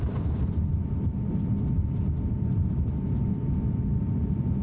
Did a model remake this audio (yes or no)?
no